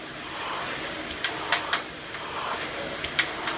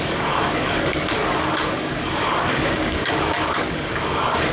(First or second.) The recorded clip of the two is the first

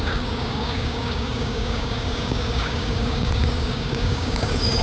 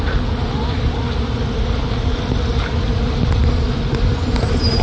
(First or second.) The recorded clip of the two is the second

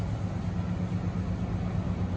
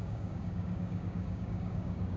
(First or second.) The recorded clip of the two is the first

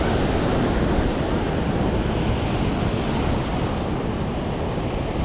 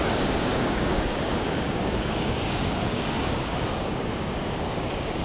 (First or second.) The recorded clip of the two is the first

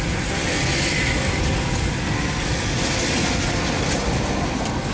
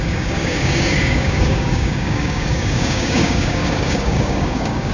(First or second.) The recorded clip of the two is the first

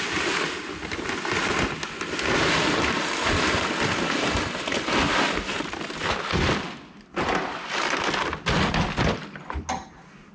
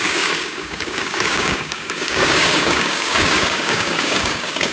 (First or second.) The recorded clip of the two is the first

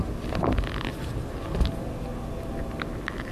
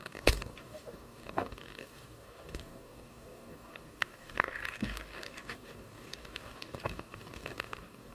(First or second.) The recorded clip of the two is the first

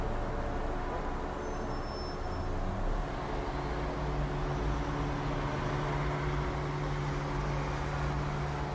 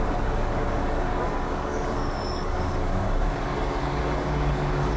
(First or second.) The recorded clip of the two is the first